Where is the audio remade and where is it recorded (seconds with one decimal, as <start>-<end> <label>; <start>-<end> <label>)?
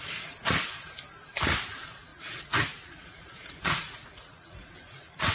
0.0-2.1 recorded; 2.1-5.3 remade